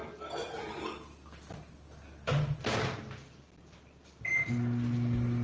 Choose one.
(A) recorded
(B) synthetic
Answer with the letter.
A